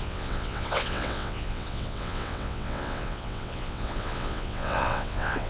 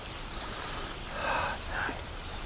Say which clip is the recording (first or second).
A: second